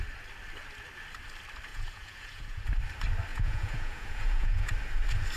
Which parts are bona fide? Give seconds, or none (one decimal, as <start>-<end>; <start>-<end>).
0.0-1.7; 2.6-3.3; 4.7-5.4